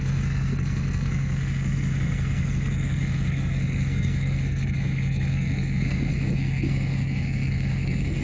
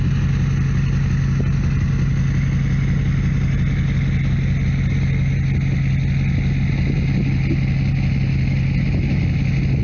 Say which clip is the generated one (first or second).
first